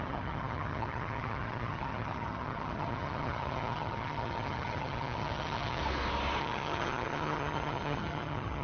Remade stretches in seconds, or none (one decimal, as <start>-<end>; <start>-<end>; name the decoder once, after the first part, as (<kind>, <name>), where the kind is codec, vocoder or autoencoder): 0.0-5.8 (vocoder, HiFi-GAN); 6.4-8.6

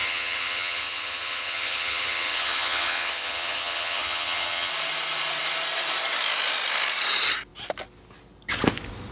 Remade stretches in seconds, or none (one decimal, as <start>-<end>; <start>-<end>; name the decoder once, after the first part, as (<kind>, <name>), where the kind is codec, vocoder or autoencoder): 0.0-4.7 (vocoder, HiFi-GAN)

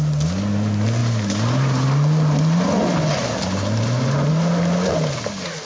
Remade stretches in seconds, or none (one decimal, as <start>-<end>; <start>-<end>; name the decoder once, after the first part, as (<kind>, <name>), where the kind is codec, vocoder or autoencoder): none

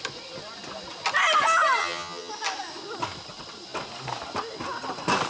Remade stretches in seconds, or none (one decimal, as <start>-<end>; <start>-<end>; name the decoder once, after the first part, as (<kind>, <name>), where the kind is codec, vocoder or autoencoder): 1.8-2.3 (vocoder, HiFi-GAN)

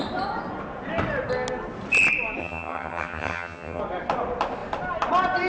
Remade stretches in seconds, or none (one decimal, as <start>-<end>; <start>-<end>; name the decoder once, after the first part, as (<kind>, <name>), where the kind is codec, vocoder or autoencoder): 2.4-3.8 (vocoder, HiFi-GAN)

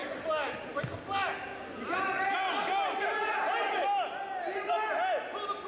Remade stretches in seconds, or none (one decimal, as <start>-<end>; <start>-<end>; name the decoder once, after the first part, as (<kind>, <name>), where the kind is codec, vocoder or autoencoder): none

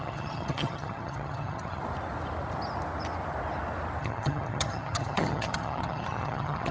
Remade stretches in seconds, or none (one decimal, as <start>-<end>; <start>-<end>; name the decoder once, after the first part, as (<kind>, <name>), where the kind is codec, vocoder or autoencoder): 0.0-1.8 (vocoder, HiFi-GAN); 4.0-6.7